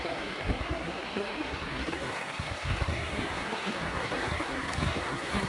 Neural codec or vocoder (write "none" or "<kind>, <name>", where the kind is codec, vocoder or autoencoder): codec, SNAC